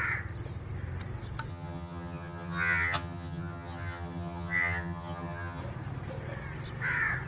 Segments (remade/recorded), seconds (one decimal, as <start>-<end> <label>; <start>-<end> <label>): 0.0-1.5 recorded; 1.5-5.6 remade; 5.6-7.3 recorded